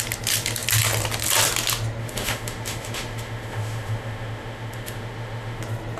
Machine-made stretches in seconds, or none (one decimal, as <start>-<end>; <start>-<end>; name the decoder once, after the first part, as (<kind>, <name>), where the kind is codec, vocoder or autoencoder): 2.0-5.6 (autoencoder, DAC-VAE)